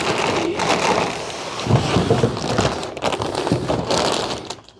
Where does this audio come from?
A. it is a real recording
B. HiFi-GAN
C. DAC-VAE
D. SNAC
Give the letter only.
A